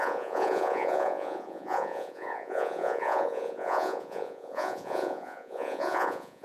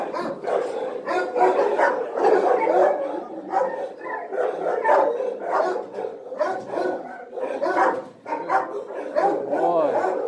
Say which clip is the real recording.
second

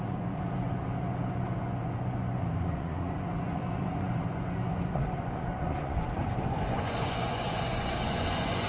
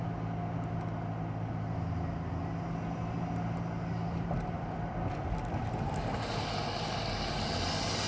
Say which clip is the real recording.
second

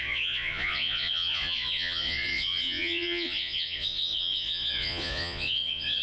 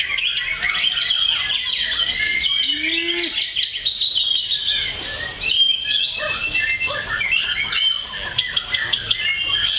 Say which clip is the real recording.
second